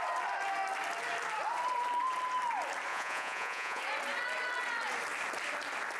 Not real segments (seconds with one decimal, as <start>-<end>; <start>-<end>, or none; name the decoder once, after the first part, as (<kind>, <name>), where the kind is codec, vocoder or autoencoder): 2.9-3.8 (vocoder, Vocos)